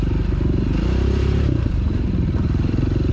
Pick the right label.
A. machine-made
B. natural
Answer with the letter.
A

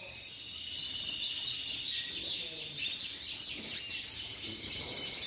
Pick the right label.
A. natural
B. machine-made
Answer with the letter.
A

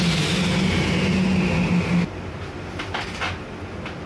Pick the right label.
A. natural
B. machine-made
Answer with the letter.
A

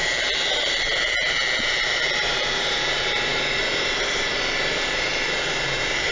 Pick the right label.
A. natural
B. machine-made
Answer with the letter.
B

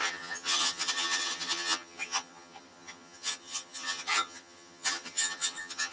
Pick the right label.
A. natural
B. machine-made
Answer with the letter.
B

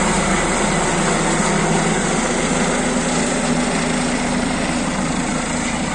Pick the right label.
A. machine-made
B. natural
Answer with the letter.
B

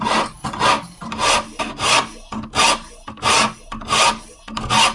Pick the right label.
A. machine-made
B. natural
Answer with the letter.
B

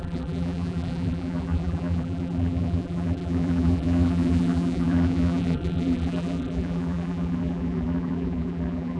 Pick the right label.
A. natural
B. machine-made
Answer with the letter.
B